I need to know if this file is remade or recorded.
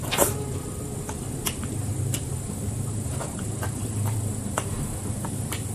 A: remade